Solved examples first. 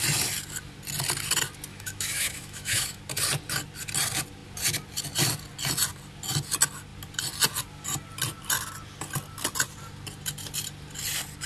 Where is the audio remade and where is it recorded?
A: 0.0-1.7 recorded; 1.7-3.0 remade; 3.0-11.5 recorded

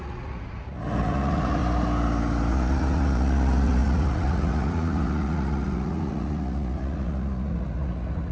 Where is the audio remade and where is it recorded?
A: 0.0-1.6 remade; 1.6-2.5 recorded; 2.5-8.3 remade